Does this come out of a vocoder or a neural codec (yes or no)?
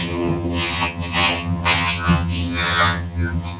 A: yes